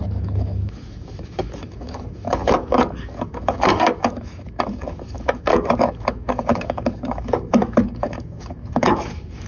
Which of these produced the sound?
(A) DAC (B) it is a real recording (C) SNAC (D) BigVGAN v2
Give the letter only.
A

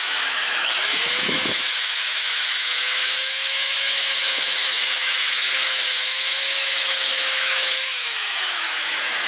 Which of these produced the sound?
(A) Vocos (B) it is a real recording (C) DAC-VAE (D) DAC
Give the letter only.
C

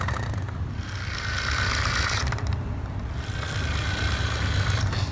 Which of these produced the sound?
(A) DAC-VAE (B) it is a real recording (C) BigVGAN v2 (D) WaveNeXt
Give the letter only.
B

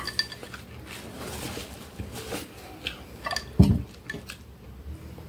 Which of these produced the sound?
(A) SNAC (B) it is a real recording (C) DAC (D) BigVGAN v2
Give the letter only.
B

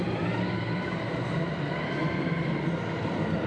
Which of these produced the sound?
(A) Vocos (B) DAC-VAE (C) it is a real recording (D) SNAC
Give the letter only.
C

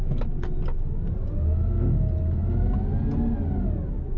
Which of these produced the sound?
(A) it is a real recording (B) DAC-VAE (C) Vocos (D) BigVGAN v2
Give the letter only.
A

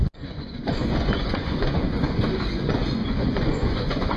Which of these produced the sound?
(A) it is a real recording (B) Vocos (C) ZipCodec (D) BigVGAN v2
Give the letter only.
B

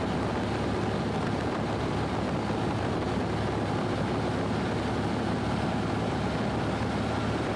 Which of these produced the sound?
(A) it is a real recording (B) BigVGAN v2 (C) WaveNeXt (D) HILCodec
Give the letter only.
A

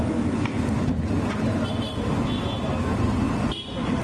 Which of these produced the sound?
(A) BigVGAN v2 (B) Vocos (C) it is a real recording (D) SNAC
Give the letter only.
C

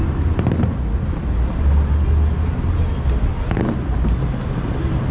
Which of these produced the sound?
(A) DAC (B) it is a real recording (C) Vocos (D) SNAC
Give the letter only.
B